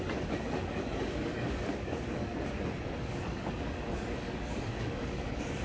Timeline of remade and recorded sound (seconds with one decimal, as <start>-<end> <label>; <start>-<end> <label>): 0.0-2.3 remade; 2.3-3.1 recorded; 3.1-5.6 remade